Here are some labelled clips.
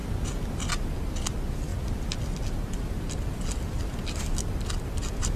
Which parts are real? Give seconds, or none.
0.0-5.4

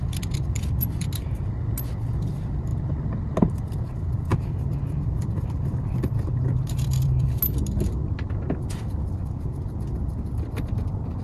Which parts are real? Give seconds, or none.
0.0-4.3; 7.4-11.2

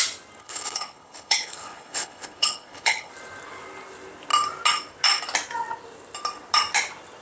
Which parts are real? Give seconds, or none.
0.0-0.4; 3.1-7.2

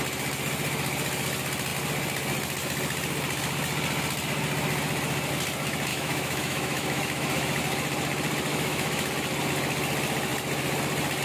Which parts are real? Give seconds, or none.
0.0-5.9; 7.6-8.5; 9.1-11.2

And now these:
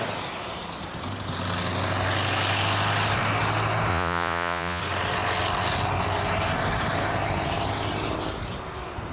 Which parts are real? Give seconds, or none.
0.0-3.9; 4.8-9.1

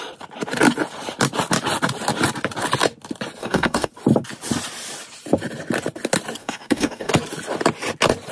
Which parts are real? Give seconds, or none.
0.0-3.4; 3.9-6.4; 7.1-8.3

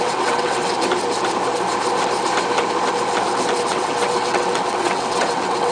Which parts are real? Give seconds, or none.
0.7-3.7